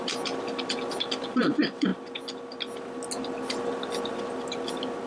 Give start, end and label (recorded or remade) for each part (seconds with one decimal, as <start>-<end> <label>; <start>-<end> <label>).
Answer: 0.0-5.1 recorded